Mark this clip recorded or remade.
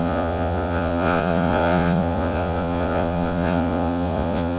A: remade